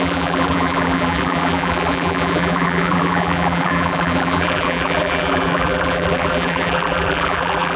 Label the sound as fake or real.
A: fake